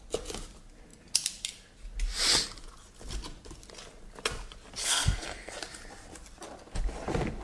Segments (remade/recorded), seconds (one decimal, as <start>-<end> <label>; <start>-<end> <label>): 0.0-4.8 recorded; 4.8-5.5 remade; 5.5-7.4 recorded

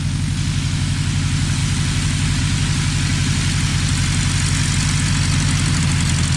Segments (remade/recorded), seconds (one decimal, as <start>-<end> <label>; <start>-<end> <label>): 0.0-6.4 recorded